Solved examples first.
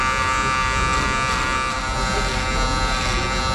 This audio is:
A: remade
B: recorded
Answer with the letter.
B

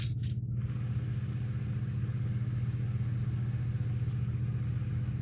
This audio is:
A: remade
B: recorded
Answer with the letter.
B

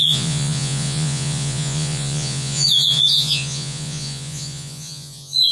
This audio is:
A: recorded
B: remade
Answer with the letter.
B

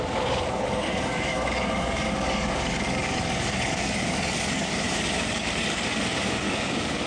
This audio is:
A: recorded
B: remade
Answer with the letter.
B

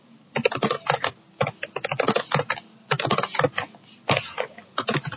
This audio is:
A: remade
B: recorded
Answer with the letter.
B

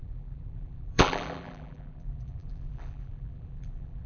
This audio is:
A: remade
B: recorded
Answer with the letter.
A